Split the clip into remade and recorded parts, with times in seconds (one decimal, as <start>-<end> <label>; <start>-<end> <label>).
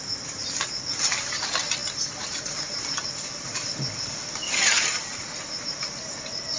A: 0.0-6.6 recorded